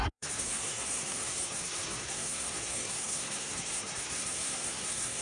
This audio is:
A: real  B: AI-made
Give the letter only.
B